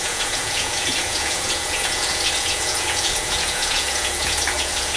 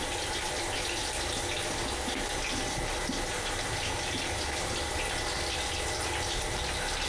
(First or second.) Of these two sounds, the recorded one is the second